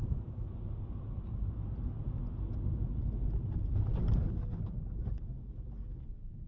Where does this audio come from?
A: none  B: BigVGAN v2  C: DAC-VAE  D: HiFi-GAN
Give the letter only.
A